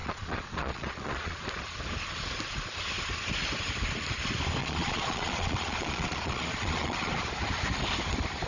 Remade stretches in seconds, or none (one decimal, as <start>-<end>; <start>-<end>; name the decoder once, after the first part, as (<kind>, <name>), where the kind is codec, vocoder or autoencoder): 0.0-1.4 (vocoder, Vocos); 4.6-7.1